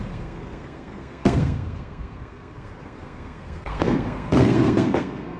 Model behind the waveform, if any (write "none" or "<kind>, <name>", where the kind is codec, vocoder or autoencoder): codec, SNAC